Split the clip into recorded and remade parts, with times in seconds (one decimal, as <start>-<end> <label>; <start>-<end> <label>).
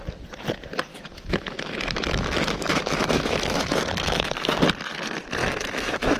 0.0-0.9 recorded; 0.9-4.6 remade; 4.6-5.4 recorded; 5.4-6.2 remade